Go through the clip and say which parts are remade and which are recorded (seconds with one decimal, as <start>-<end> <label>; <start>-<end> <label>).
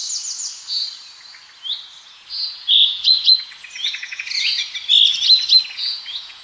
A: 0.0-2.0 recorded; 2.0-4.6 remade; 4.6-5.8 recorded; 5.8-6.4 remade